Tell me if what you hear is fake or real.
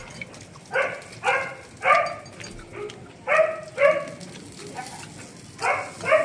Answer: real